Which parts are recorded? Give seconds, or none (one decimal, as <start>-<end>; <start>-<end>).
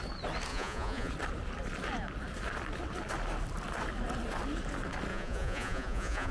0.0-0.5; 1.1-5.1